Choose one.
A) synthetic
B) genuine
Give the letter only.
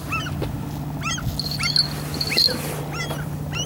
B